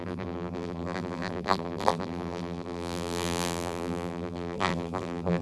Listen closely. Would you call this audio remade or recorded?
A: remade